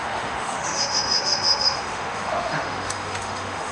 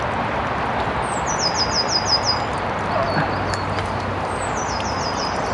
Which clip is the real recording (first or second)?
second